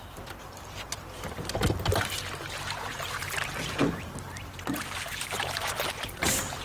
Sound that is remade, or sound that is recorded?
remade